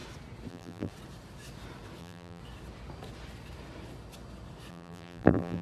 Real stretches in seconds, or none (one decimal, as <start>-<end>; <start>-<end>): 0.0-0.5; 0.9-2.0; 2.4-4.7